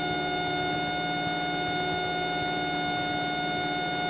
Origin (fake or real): real